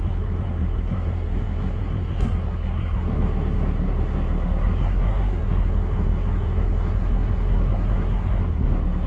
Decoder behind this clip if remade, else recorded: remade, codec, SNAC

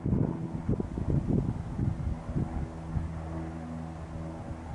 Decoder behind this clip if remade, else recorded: recorded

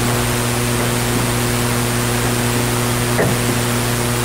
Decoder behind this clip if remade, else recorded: recorded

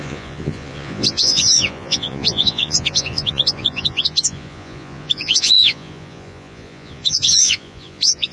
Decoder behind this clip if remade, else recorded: remade, vocoder, Vocos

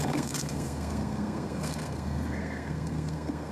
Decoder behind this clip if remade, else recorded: remade, codec, SNAC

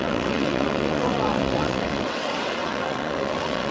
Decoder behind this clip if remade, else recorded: remade, vocoder, WaveNeXt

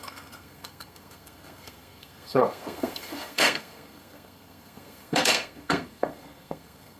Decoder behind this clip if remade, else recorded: remade, codec, SNAC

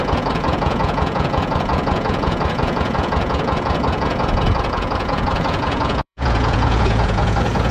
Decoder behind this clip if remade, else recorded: remade, vocoder, Vocos